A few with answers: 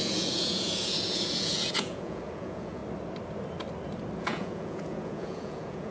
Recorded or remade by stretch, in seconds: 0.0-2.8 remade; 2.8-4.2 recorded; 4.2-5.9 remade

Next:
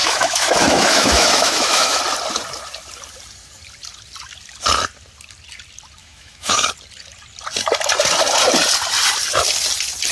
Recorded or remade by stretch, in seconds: 0.0-2.0 remade; 2.0-6.0 recorded; 6.0-6.7 remade; 6.7-10.1 recorded

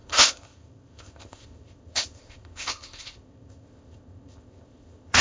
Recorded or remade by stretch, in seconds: 0.0-5.2 remade

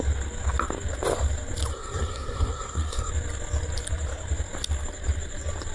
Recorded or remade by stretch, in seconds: 0.0-1.7 recorded; 1.7-3.1 remade; 3.1-5.7 recorded

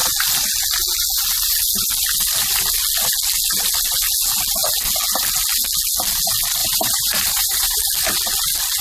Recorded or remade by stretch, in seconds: 0.0-6.6 recorded; 6.6-7.8 remade; 7.8-8.8 recorded

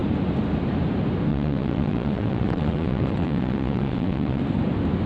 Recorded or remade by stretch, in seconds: 0.0-1.3 recorded; 1.3-4.4 remade; 4.4-5.1 recorded